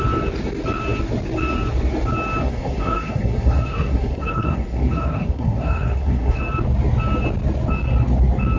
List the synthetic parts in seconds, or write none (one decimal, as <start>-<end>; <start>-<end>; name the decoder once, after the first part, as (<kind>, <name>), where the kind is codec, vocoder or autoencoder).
2.4-6.4 (codec, SNAC)